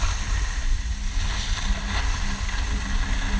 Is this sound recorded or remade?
recorded